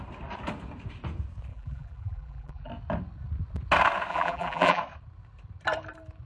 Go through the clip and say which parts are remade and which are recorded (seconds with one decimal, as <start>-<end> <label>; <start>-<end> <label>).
0.0-1.5 recorded; 1.5-2.7 remade; 2.7-4.1 recorded; 4.1-4.8 remade; 4.8-6.3 recorded